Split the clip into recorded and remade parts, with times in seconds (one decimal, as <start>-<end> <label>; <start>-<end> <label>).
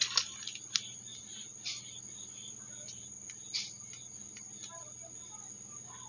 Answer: 0.0-6.1 recorded